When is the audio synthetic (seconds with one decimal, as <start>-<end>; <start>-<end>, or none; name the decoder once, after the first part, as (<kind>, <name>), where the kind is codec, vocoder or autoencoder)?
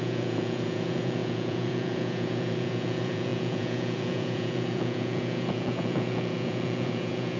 0.0-7.4 (vocoder, Vocos)